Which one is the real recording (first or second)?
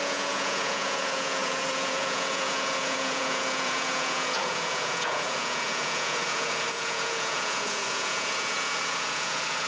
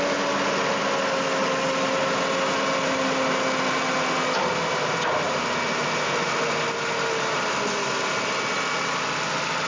second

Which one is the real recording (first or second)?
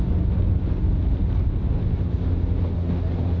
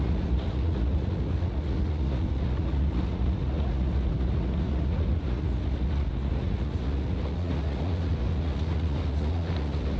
first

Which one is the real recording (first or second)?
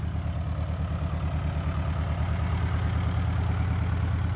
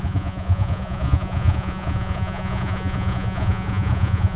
first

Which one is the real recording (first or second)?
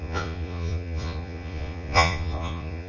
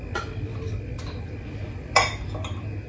second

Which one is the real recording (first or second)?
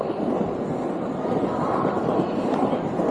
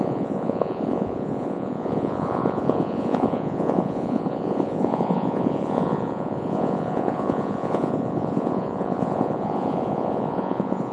first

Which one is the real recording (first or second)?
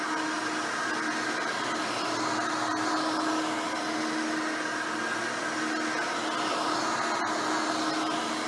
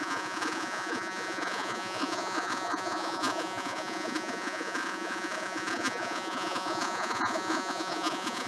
first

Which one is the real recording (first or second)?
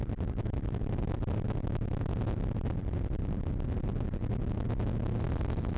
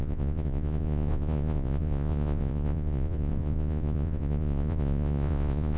first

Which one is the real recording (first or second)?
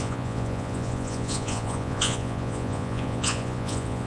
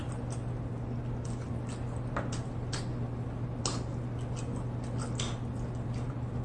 second